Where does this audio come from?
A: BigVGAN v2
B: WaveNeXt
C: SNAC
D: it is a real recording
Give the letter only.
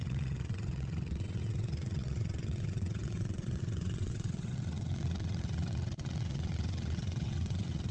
B